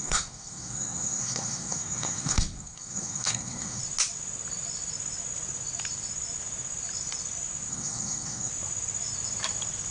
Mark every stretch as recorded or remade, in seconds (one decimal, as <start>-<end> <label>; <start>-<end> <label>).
0.0-3.8 remade; 3.8-7.7 recorded; 7.7-8.5 remade; 8.5-9.9 recorded